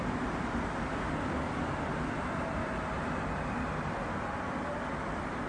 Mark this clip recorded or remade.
recorded